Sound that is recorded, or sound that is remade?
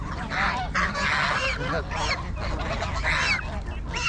recorded